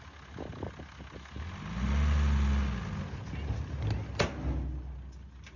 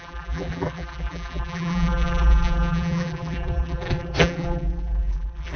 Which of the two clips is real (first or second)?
first